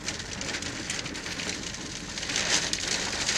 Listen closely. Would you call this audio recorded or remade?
recorded